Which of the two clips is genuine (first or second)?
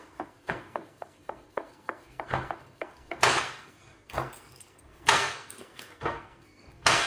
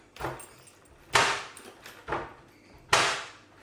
second